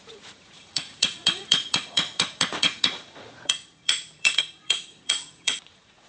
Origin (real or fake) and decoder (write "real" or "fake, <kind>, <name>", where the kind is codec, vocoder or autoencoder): fake, vocoder, Vocos